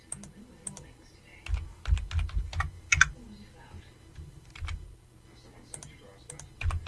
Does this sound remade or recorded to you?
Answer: recorded